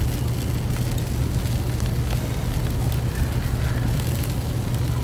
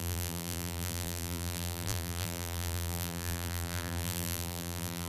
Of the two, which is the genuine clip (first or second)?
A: first